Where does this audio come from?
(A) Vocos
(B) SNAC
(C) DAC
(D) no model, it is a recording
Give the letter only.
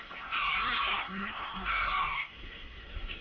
B